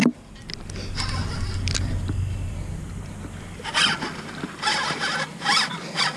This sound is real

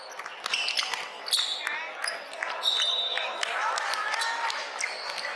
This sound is real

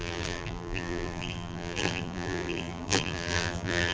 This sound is fake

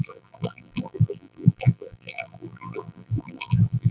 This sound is fake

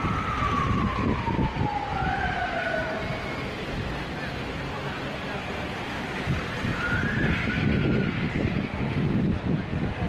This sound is real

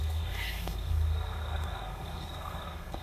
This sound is fake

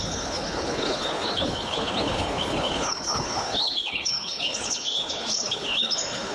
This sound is fake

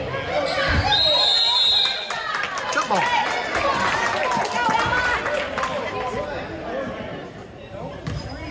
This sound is real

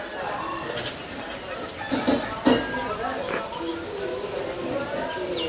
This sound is real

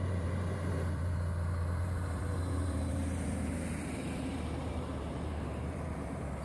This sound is fake